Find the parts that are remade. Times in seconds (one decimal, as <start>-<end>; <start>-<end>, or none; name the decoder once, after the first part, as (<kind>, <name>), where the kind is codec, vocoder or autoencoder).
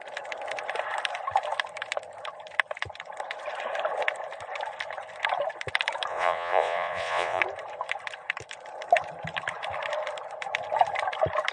6.1-7.4 (vocoder, Vocos)